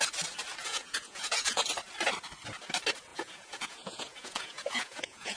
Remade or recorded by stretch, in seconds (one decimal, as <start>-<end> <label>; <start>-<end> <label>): 0.0-0.6 recorded; 0.6-1.7 remade; 1.7-3.1 recorded; 3.1-5.4 remade